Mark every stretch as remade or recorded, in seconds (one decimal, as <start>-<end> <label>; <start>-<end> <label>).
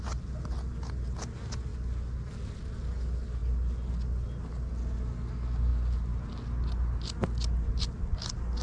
0.0-8.6 recorded